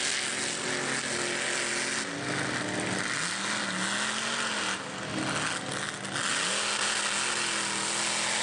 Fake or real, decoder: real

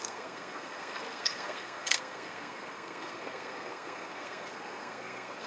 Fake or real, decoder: fake, codec, SNAC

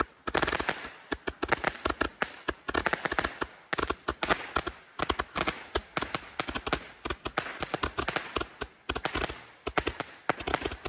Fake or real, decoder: real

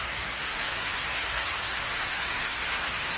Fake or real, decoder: fake, codec, SNAC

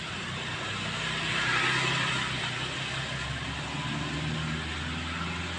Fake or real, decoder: real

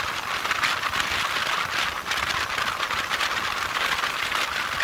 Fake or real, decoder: real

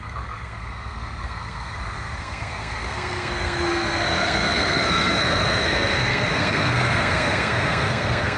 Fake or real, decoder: fake, codec, SNAC